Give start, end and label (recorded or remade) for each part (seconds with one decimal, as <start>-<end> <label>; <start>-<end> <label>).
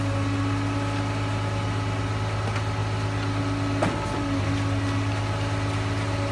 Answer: 0.0-6.3 recorded